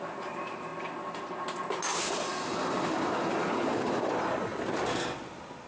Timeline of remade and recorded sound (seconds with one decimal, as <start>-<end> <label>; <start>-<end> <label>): 0.0-0.7 remade; 0.7-3.9 recorded; 3.9-4.5 remade; 4.5-5.7 recorded